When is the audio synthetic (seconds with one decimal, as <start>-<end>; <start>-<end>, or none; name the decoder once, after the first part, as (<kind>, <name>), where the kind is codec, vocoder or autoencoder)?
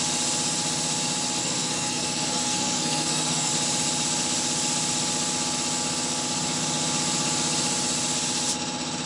1.4-3.5 (codec, SNAC)